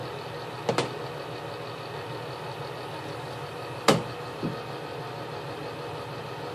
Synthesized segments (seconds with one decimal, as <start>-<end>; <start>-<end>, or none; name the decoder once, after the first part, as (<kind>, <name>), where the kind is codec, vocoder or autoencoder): none